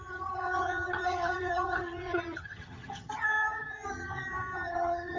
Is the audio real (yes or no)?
no